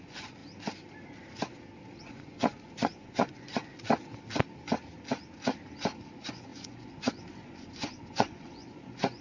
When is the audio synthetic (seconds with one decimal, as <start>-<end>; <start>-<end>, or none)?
0.0-0.4; 2.0-3.7; 6.1-9.2